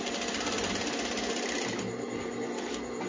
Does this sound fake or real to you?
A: real